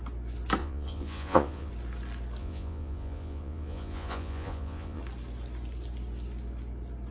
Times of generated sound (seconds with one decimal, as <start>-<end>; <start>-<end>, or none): 0.6-1.7; 2.4-5.0